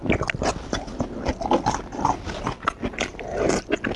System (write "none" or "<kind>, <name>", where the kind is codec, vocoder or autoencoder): none